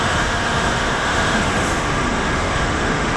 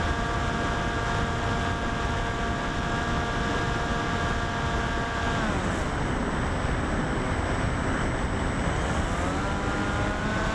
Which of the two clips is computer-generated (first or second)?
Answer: first